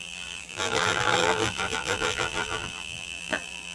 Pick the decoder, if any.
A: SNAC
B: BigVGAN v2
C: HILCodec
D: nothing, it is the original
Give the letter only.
B